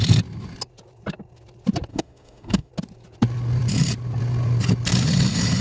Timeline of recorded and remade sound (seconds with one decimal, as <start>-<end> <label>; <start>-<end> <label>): 0.0-1.9 recorded; 1.9-2.7 remade; 2.7-5.6 recorded